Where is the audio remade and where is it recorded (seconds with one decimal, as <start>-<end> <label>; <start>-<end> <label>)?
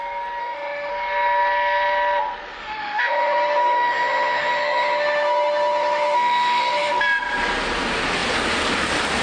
0.0-0.4 recorded; 0.4-0.9 remade; 0.9-2.6 recorded; 2.6-7.0 remade; 7.0-9.2 recorded